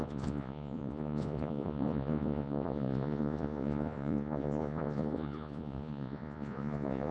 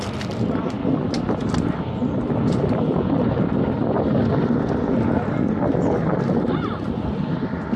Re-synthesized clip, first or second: first